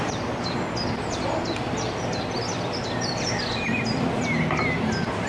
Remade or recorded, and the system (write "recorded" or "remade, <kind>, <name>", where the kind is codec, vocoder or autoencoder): recorded